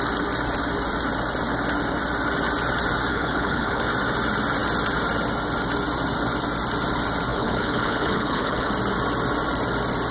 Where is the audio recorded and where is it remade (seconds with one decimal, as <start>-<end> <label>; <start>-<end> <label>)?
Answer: 0.0-3.1 recorded; 3.1-3.8 remade; 3.8-7.3 recorded; 7.3-8.7 remade; 8.7-10.1 recorded